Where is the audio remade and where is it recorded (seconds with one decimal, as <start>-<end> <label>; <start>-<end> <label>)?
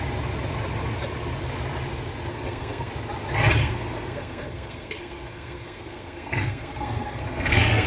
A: 0.0-2.3 recorded; 2.3-2.9 remade; 2.9-3.6 recorded; 3.6-7.9 remade